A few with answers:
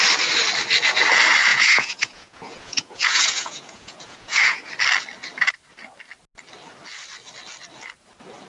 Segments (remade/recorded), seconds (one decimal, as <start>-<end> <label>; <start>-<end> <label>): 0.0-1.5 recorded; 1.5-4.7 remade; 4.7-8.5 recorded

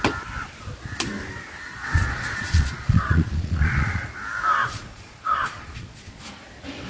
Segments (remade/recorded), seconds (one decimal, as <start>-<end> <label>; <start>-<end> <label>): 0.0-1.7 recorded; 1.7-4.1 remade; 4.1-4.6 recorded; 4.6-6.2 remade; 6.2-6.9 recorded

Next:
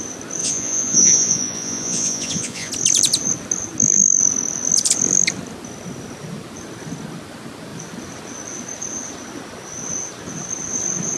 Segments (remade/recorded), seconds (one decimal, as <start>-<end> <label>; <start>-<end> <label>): 0.0-0.4 recorded; 0.4-2.7 remade; 2.7-11.2 recorded